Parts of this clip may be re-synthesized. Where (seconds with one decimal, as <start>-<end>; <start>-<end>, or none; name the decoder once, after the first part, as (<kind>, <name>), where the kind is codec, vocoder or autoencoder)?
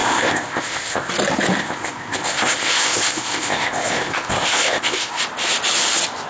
0.0-1.1 (codec, ZipCodec); 1.6-5.2